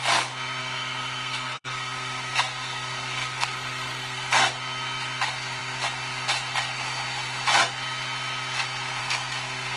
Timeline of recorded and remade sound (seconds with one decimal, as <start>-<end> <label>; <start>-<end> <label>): 0.0-0.6 recorded; 0.6-4.5 remade; 4.5-9.0 recorded; 9.0-9.8 remade